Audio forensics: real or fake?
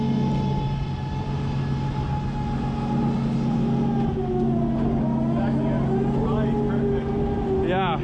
real